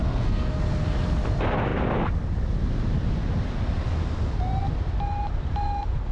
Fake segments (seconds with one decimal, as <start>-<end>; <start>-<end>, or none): 0.0-0.6